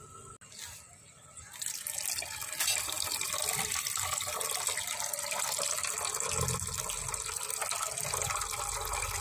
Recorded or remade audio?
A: recorded